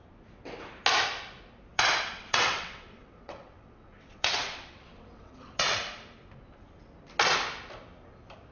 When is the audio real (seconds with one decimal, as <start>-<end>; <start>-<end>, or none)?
0.0-1.7; 5.8-8.5

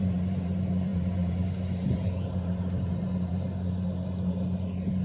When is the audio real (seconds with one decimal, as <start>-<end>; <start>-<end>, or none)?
none

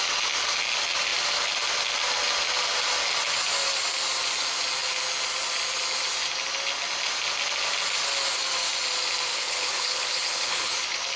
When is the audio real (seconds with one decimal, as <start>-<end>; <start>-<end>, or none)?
0.0-9.3; 10.7-11.2

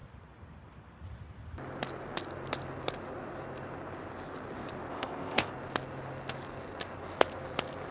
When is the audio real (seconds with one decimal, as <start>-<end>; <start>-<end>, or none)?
0.0-4.9; 5.5-7.9

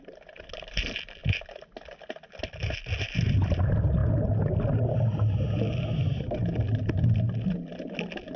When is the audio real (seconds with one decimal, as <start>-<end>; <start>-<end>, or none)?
0.0-8.4

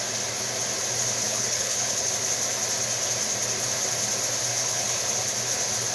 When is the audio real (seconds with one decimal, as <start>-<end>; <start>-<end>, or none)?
0.0-1.2; 2.1-4.5; 5.1-5.9

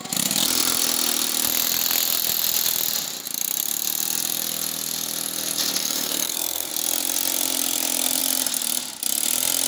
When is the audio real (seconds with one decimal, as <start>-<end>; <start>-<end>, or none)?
0.0-5.8; 6.7-9.7